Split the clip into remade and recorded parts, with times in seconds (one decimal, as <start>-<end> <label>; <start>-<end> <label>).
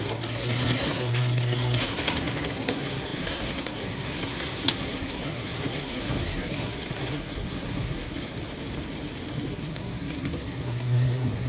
0.0-8.4 remade; 8.4-9.5 recorded; 9.5-11.5 remade